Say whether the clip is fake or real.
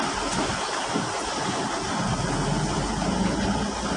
real